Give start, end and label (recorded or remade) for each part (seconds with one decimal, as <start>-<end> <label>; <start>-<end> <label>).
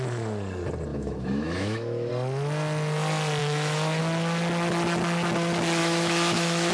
0.0-0.9 recorded; 0.9-2.1 remade; 2.1-3.4 recorded; 3.4-4.0 remade; 4.0-5.8 recorded; 5.8-6.7 remade